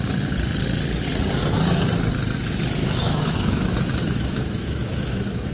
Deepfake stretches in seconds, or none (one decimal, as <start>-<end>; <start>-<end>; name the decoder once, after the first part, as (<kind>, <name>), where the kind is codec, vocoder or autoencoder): 2.8-5.5 (autoencoder, DAC-VAE)